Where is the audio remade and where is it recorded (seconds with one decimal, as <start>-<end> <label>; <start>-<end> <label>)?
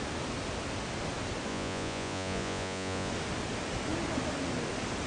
0.0-1.5 recorded; 1.5-3.1 remade; 3.1-5.1 recorded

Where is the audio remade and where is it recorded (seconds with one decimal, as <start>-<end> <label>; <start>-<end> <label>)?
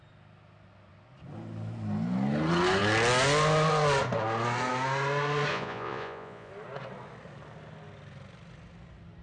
0.0-5.5 recorded; 5.5-6.5 remade; 6.5-9.2 recorded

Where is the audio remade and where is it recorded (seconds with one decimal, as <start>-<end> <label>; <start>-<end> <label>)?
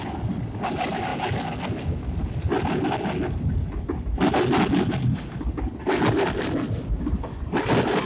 0.0-8.1 recorded